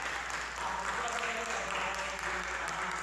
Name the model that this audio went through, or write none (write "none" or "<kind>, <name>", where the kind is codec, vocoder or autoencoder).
none